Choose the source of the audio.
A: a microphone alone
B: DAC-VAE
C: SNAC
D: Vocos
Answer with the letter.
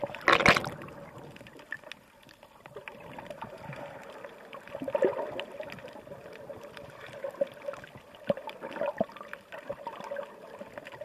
A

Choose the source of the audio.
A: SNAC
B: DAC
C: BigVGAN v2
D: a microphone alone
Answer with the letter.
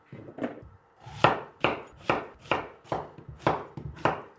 D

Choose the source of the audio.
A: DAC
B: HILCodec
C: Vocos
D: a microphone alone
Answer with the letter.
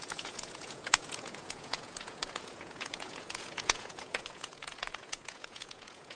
C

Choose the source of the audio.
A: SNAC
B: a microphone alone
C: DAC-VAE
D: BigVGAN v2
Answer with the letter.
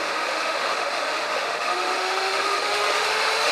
C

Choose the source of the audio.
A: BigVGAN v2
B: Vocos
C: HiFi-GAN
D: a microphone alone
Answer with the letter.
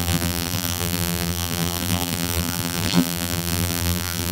A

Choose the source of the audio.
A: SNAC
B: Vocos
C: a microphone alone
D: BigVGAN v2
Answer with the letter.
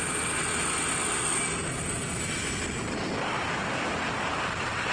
C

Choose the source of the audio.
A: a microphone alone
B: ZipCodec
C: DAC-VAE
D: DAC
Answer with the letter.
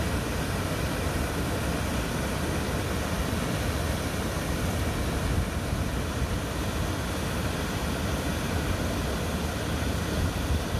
A